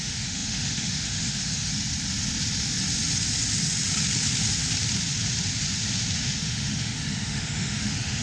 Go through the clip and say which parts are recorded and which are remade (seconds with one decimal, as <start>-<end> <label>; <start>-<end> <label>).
0.0-1.7 remade; 1.7-6.4 recorded; 6.4-8.2 remade